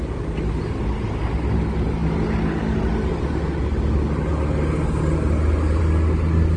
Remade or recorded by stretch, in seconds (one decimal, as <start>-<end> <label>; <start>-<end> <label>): 0.0-6.6 recorded